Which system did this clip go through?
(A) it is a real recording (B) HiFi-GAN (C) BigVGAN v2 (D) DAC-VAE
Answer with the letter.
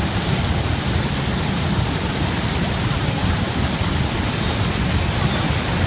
A